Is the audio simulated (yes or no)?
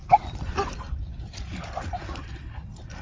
no